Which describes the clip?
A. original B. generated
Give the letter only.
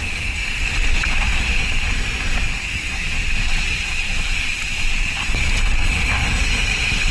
A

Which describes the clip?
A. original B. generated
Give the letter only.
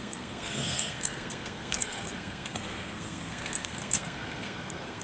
B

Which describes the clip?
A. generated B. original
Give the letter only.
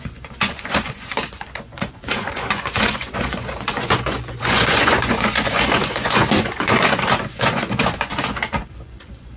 A